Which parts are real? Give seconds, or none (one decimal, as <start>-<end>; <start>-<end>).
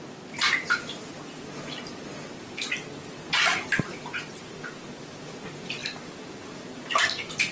0.0-7.5